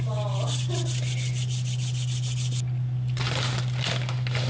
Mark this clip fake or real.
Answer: real